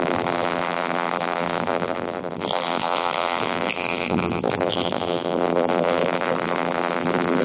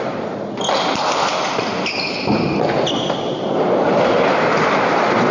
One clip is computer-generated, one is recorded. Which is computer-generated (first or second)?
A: first